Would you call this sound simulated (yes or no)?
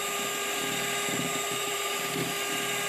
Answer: no